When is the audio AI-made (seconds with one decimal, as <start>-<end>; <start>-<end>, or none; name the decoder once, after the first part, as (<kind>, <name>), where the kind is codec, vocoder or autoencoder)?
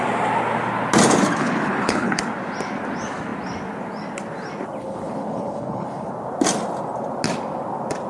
1.4-2.2 (codec, HILCodec); 4.8-6.1